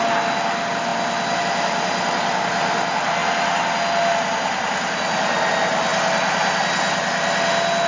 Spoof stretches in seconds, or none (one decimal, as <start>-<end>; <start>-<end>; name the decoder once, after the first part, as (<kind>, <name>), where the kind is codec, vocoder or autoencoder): none